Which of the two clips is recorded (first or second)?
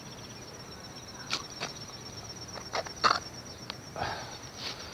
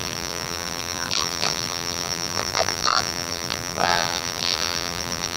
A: first